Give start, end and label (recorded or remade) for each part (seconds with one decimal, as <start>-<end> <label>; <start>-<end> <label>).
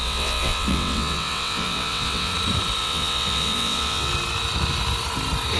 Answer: 0.0-2.3 remade; 2.3-2.8 recorded; 2.8-4.1 remade; 4.1-5.6 recorded